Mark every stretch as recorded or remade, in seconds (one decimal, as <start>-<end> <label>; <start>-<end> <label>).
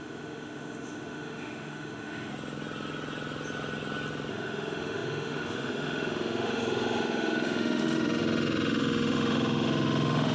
0.0-2.3 remade; 2.3-4.3 recorded; 4.3-10.3 remade